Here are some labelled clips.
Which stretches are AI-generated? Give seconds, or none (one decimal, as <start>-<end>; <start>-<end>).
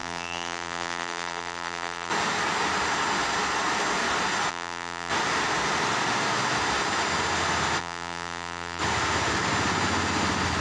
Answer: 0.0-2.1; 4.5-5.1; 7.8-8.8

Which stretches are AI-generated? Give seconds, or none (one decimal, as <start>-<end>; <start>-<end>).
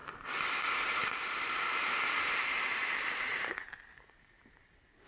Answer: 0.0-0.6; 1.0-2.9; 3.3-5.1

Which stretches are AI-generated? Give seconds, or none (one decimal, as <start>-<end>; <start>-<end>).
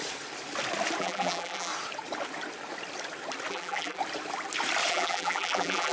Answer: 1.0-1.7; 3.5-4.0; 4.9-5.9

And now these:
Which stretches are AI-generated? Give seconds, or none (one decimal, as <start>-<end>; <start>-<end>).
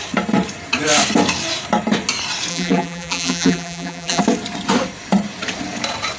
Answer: 2.5-4.2